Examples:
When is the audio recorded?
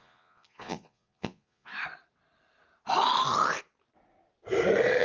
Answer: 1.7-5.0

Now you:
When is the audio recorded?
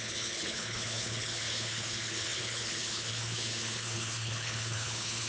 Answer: none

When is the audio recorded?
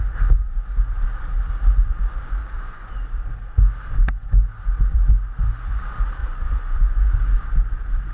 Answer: 0.0-2.4; 2.9-6.2; 7.1-8.1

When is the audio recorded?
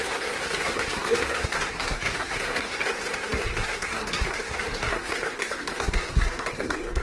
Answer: none